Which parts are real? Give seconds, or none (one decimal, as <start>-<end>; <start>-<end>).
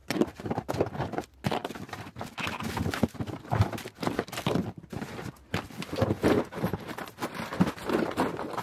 0.8-8.6